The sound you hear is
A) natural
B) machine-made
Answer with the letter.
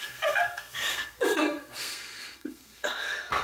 B